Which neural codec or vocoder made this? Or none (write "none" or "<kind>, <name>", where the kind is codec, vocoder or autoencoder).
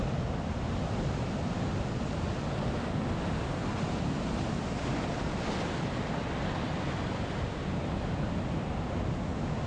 none